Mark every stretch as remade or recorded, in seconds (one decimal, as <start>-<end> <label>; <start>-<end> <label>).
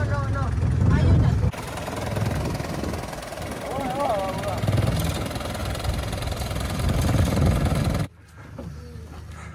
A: 0.0-5.6 recorded; 5.6-7.2 remade; 7.2-9.5 recorded